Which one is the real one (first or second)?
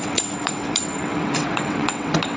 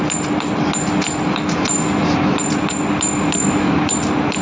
second